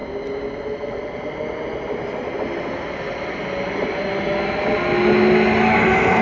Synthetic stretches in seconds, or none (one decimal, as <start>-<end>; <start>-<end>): none